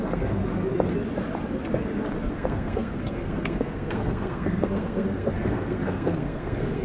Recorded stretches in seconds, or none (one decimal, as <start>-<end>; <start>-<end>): 0.4-2.3